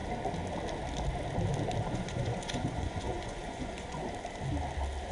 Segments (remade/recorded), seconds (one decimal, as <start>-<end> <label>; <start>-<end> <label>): 0.0-1.8 recorded; 1.8-4.0 remade; 4.0-5.1 recorded